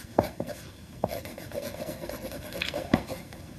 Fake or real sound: fake